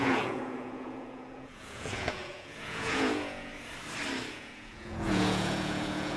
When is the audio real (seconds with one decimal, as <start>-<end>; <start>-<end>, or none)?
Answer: 3.5-4.3